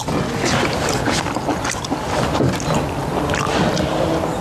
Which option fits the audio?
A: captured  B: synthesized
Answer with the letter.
A